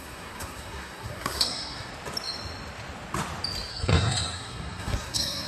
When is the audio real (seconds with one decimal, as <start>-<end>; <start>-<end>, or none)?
1.9-3.7